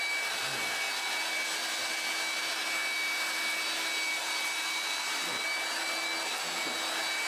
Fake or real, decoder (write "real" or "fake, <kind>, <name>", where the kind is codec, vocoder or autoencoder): real